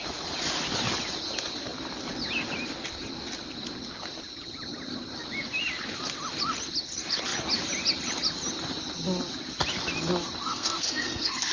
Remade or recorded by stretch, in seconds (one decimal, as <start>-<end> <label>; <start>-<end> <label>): 0.0-10.4 recorded; 10.4-11.5 remade